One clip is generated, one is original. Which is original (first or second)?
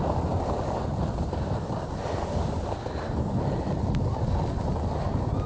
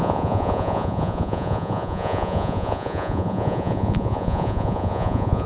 first